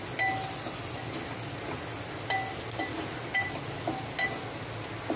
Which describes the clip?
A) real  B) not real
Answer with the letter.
A